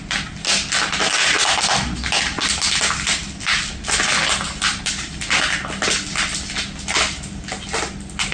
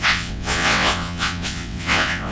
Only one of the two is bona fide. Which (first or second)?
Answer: first